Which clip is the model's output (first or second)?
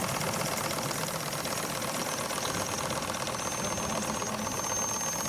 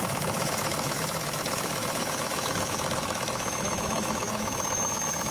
second